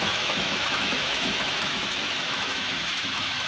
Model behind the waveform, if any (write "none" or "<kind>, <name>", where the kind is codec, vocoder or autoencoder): autoencoder, DAC-VAE